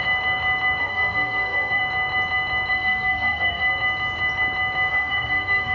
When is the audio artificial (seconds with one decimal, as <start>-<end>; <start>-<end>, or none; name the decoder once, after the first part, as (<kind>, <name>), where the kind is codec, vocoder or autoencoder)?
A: 0.8-1.8 (codec, SNAC); 2.7-3.7; 4.9-5.7